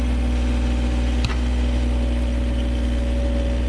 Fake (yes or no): no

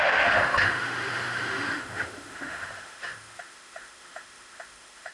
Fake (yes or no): yes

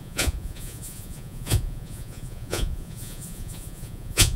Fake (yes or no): yes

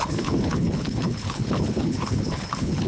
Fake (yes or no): yes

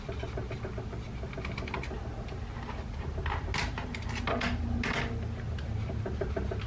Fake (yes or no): no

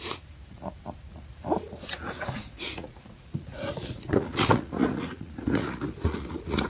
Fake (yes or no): yes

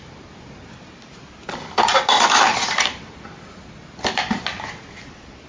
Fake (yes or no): no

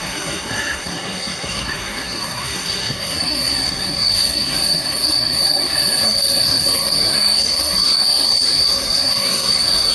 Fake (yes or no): yes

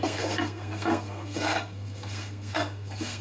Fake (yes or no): yes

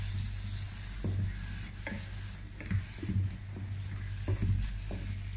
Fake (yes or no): no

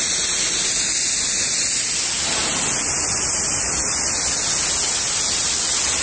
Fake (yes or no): no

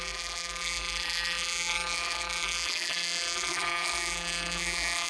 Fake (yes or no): yes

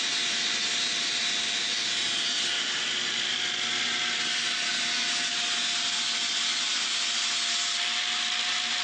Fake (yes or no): no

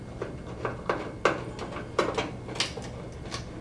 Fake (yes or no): no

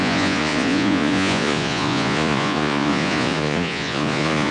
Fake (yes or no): yes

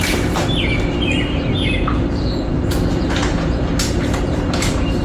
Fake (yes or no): yes